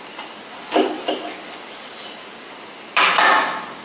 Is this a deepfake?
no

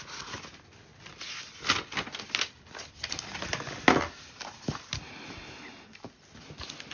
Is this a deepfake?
no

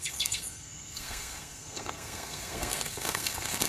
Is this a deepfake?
yes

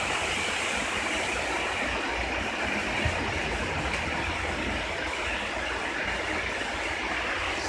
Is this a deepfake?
no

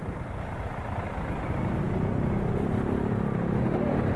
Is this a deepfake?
no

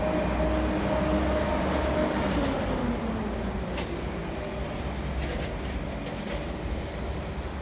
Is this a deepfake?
no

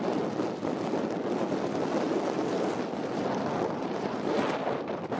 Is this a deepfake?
no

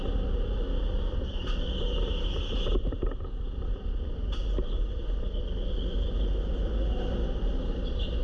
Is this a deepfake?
no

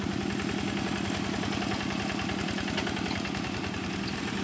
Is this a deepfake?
no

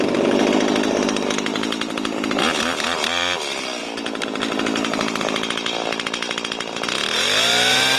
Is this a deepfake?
no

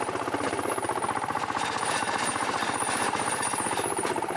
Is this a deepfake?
yes